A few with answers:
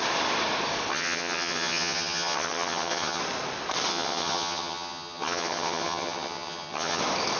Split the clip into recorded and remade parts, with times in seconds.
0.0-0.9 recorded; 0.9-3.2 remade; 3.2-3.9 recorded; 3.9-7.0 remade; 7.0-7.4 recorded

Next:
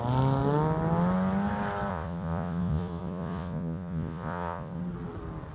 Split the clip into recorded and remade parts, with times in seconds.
0.0-1.9 recorded; 1.9-4.8 remade; 4.8-5.5 recorded

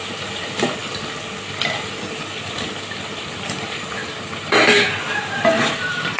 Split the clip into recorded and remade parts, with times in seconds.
0.0-0.8 remade; 0.8-2.8 recorded; 2.8-6.2 remade

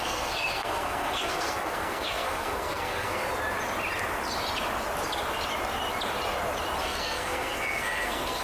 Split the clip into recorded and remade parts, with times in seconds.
0.0-3.2 remade; 3.2-6.8 recorded; 6.8-8.4 remade

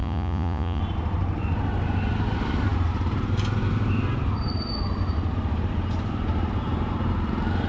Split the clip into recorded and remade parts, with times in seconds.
0.0-0.8 remade; 0.8-7.7 recorded

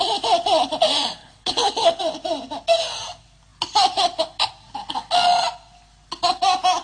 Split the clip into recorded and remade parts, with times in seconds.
0.0-1.2 recorded; 1.2-2.0 remade; 2.0-6.8 recorded

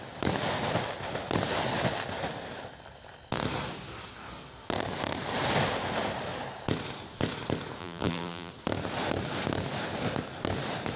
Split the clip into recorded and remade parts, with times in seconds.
0.0-7.8 recorded; 7.8-8.5 remade; 8.5-11.0 recorded

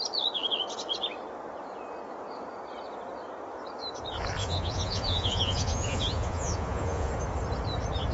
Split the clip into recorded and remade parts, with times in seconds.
0.0-4.4 recorded; 4.4-7.1 remade; 7.1-8.1 recorded